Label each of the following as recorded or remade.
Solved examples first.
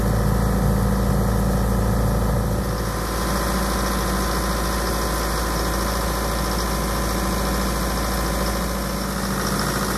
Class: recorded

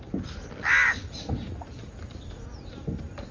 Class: recorded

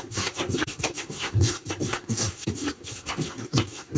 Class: remade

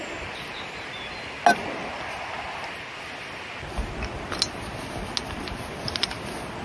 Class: recorded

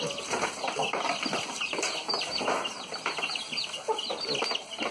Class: recorded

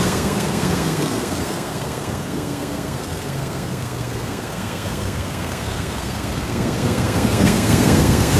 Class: remade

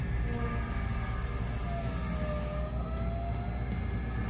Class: recorded